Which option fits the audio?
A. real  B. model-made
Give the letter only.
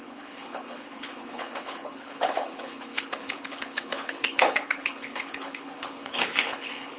B